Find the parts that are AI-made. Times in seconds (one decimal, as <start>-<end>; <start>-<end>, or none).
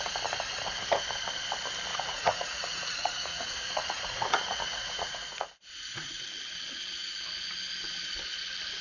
1.9-6.2